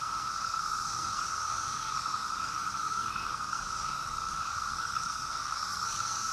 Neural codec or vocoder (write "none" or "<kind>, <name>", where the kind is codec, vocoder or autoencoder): codec, SNAC